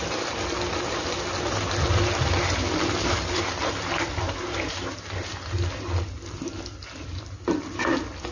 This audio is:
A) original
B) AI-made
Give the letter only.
A